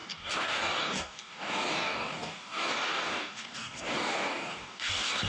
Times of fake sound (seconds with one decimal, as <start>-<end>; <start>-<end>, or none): 0.0-5.3